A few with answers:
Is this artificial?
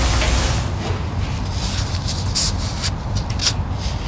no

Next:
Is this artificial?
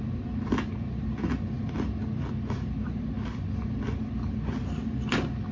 no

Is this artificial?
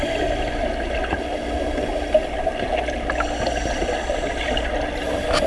no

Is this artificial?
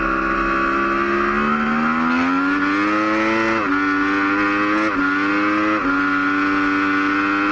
no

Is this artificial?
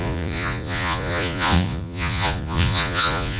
yes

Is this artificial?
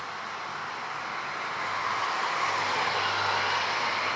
no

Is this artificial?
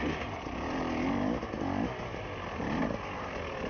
no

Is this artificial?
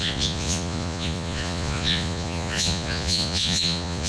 yes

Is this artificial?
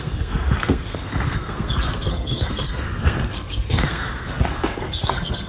yes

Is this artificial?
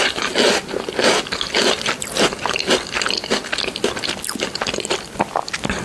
no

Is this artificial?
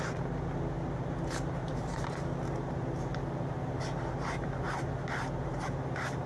yes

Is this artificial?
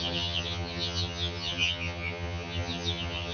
yes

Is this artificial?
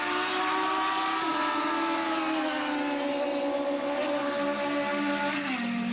no